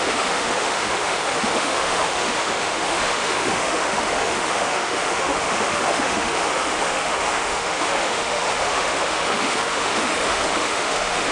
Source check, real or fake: fake